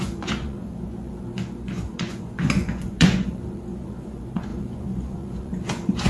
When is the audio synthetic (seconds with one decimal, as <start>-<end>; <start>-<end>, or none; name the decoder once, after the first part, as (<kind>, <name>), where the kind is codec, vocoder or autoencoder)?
0.0-6.1 (vocoder, Vocos)